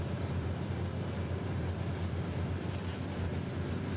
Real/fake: real